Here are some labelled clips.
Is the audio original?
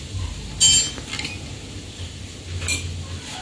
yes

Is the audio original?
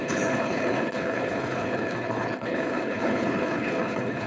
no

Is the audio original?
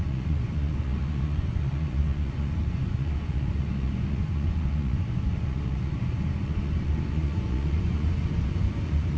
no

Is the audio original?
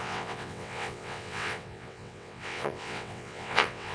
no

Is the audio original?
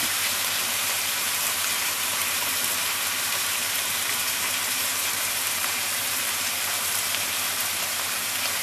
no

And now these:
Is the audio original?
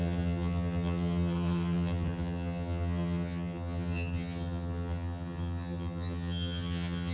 no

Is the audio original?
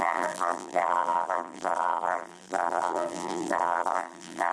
no